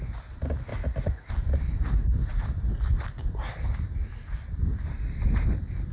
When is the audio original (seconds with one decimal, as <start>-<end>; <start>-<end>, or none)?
0.0-0.7; 1.3-5.9